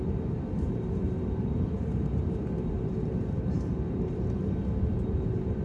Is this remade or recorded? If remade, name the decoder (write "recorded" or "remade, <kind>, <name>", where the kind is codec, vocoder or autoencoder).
remade, vocoder, BigVGAN v2